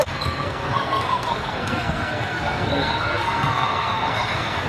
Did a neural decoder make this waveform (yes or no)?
yes